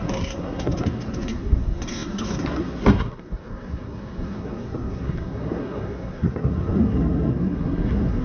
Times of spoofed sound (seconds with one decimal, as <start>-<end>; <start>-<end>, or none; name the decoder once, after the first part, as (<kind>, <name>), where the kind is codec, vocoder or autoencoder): 0.0-8.2 (codec, SNAC)

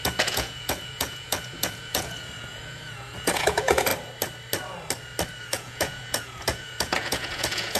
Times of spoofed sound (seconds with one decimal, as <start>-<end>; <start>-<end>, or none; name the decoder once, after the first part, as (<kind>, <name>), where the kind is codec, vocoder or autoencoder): 0.0-3.9 (vocoder, Vocos); 5.4-7.8

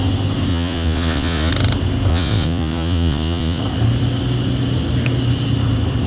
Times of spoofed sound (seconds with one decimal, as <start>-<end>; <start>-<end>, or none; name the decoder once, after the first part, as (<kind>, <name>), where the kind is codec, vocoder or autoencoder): 0.5-1.5 (vocoder, Vocos); 2.1-3.6

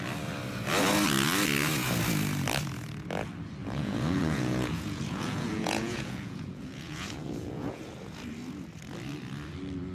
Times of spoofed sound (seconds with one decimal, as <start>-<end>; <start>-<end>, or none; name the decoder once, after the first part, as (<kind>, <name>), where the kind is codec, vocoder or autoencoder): 3.6-7.8 (vocoder, Vocos)

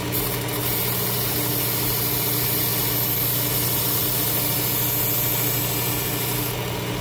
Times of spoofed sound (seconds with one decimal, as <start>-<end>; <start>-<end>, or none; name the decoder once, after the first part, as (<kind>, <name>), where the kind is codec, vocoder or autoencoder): none

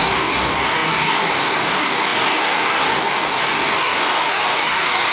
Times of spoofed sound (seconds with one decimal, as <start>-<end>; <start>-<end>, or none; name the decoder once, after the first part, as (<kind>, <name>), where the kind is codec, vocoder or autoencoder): 0.0-5.1 (codec, DAC)

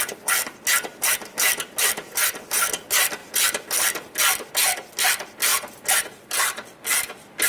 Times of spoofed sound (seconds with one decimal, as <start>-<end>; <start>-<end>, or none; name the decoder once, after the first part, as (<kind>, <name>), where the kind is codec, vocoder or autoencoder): none

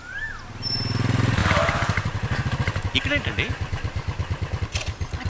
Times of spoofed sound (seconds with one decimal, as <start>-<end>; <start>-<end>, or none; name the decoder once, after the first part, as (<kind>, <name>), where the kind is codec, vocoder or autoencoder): none